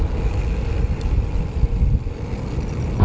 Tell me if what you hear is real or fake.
real